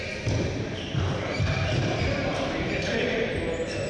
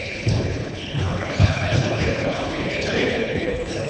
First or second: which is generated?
second